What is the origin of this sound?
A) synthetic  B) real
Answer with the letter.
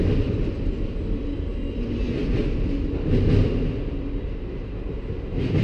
B